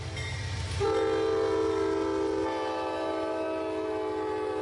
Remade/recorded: recorded